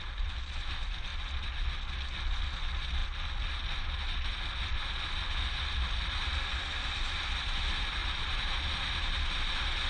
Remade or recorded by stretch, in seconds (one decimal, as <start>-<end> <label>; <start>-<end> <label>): 0.0-8.0 recorded; 8.0-9.1 remade; 9.1-9.9 recorded